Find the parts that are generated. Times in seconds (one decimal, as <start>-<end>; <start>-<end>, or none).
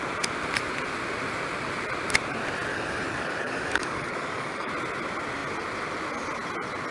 2.7-4.7